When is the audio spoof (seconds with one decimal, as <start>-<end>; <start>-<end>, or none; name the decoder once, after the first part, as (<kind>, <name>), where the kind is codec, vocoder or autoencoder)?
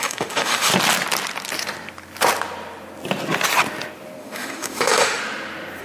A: 0.0-0.7 (autoencoder, DAC-VAE); 4.2-5.2